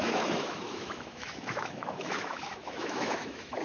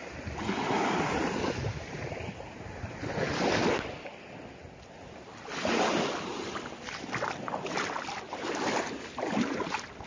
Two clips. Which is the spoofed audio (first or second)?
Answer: first